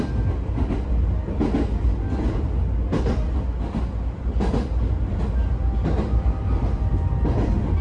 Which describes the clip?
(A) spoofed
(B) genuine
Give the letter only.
B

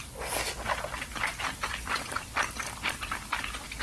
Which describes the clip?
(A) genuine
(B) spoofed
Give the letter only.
A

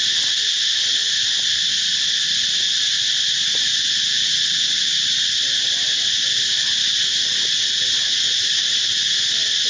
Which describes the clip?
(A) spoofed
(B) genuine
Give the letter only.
B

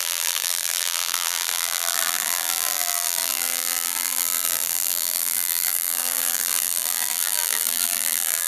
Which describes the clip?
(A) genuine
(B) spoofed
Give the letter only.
B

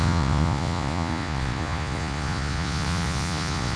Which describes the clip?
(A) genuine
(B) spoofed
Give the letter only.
B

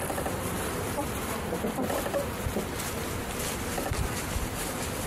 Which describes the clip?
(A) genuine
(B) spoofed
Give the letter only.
A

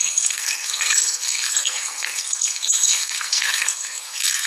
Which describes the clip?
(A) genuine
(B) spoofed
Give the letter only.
B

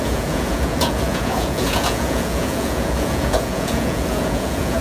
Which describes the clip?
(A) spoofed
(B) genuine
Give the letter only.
A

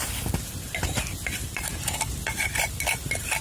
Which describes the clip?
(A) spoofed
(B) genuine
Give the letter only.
B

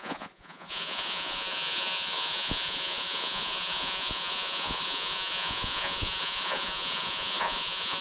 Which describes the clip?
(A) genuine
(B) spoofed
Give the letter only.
B